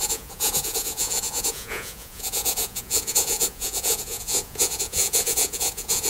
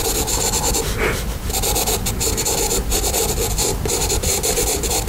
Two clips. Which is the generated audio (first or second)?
first